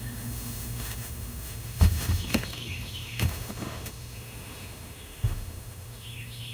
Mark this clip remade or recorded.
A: remade